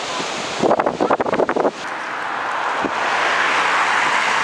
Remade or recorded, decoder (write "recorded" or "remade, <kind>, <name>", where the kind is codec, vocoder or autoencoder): recorded